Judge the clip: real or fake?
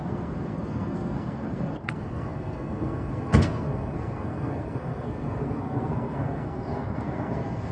fake